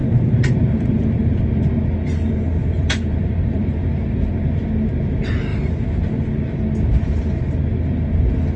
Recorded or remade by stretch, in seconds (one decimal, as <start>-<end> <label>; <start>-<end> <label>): 0.0-1.2 remade; 1.2-2.6 recorded; 2.6-4.3 remade; 4.3-5.5 recorded; 5.5-6.3 remade; 6.3-8.6 recorded